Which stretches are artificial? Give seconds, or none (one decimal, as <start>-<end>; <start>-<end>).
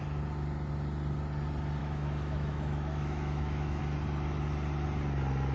1.8-3.8